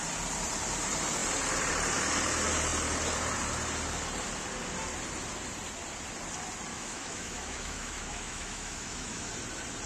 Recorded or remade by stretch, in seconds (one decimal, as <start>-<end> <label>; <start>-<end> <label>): 0.0-6.7 recorded; 6.7-9.3 remade; 9.3-9.9 recorded